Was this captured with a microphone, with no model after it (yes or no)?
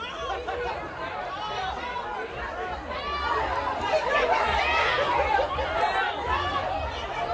yes